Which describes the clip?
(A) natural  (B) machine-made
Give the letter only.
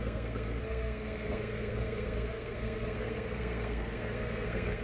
B